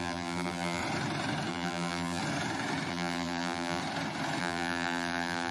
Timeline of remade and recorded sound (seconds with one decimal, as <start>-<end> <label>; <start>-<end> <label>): 0.0-0.8 remade; 0.8-1.5 recorded; 1.5-2.2 remade; 2.2-2.9 recorded; 2.9-3.8 remade; 3.8-4.4 recorded; 4.4-5.5 remade